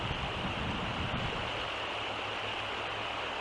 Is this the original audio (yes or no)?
yes